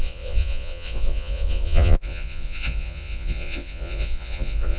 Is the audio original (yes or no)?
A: no